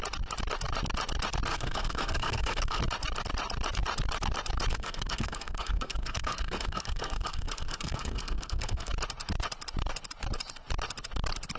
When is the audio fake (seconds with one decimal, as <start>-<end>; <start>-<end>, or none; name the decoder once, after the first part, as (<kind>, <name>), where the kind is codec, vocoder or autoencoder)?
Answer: 1.5-2.8 (codec, SNAC); 4.7-8.9